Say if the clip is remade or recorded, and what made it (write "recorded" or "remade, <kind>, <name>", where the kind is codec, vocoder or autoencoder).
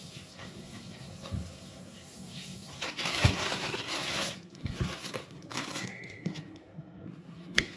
remade, codec, SNAC